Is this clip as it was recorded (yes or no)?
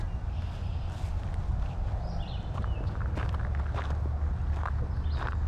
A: yes